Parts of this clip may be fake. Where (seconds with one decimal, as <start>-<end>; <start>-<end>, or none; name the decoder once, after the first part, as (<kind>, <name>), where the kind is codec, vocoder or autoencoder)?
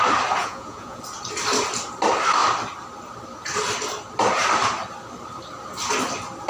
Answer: 0.4-1.0 (vocoder, Vocos)